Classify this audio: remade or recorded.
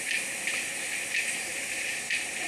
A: recorded